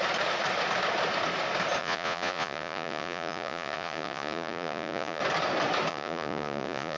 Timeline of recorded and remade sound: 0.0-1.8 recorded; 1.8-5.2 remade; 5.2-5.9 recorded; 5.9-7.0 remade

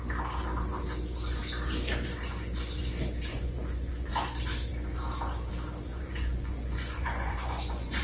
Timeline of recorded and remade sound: 0.0-3.3 recorded; 3.3-4.1 remade; 4.1-5.9 recorded; 5.9-8.0 remade

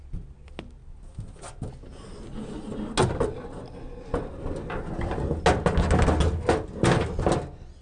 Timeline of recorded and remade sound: 0.0-7.8 recorded

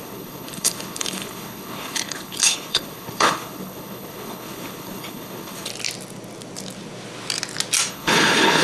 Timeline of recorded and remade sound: 0.0-5.7 remade; 5.7-7.9 recorded; 7.9-8.6 remade

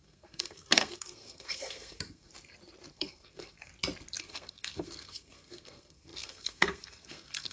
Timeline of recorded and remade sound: 0.0-2.3 remade; 2.3-2.9 recorded; 2.9-3.7 remade; 3.7-4.2 recorded; 4.2-7.5 remade